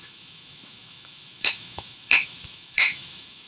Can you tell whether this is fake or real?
fake